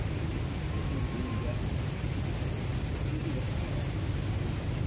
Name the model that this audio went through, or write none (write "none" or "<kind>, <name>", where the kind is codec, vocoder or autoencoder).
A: none